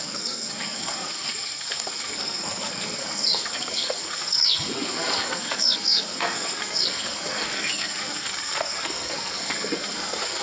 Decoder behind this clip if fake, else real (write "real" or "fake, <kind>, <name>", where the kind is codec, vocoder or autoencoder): fake, codec, SNAC